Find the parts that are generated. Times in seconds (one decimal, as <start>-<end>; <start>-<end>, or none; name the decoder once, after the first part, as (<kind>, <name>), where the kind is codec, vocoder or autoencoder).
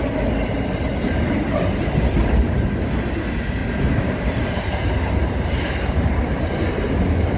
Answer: 3.6-4.5 (vocoder, BigVGAN v2); 5.2-7.4